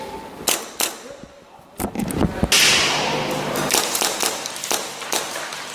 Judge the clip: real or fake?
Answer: real